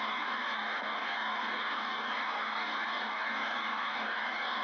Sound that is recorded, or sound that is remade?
remade